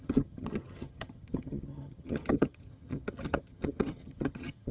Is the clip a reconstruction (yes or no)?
yes